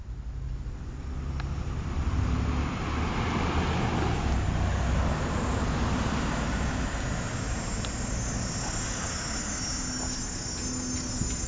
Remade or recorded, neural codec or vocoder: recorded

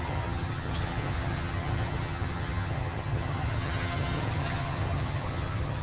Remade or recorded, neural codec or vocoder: remade, vocoder, HiFi-GAN